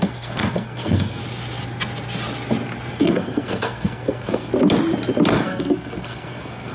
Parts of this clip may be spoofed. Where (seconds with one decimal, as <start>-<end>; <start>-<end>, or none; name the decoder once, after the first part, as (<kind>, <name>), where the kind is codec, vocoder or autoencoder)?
0.0-1.2 (codec, SNAC); 3.0-4.5; 5.3-6.7